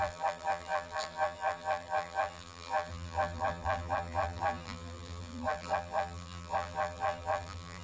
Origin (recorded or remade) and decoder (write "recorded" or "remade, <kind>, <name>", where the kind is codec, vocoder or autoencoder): remade, vocoder, BigVGAN v2